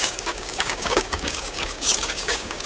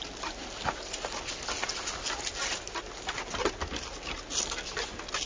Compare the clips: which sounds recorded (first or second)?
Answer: second